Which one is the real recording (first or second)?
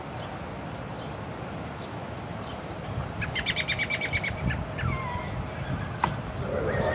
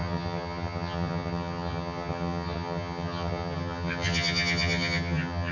first